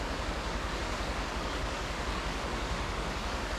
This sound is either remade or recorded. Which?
remade